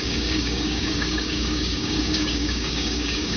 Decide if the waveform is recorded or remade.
remade